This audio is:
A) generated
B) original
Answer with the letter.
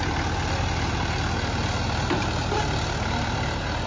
B